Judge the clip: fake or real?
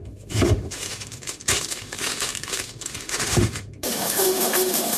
fake